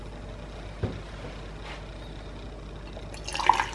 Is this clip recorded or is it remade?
recorded